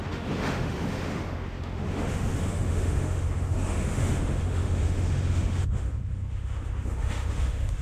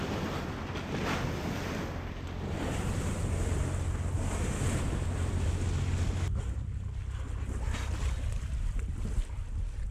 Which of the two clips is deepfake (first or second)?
first